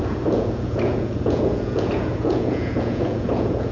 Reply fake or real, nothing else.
fake